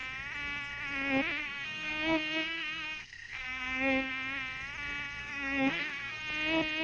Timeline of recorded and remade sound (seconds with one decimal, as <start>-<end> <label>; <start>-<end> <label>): 0.0-1.4 recorded; 1.4-4.1 remade; 4.1-5.2 recorded; 5.2-6.2 remade; 6.2-6.8 recorded